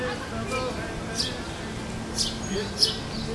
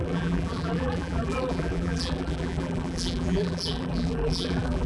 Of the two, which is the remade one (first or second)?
second